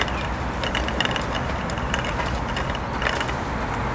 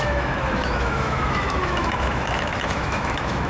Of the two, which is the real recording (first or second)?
first